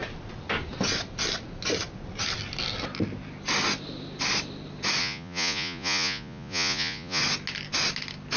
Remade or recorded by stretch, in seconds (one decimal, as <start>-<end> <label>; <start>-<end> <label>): 0.0-5.0 recorded; 5.0-7.2 remade; 7.2-8.4 recorded

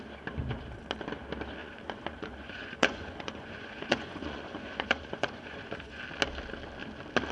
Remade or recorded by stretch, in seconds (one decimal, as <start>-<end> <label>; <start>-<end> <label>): 0.0-1.6 recorded; 1.6-6.0 remade; 6.0-7.3 recorded